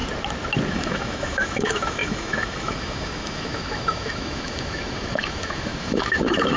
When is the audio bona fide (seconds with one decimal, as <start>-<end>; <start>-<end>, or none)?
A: 0.0-0.7